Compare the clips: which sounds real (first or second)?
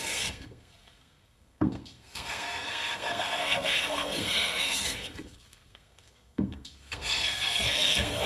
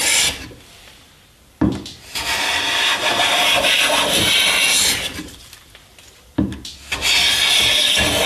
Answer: second